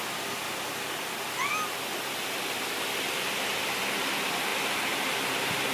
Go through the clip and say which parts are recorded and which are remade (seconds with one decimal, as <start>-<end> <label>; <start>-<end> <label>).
0.0-5.7 recorded